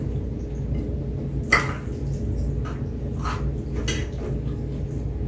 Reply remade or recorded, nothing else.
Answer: recorded